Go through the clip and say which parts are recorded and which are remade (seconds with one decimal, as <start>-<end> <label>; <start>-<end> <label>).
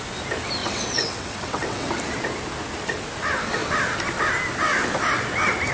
0.0-0.6 recorded; 0.6-1.9 remade; 1.9-5.7 recorded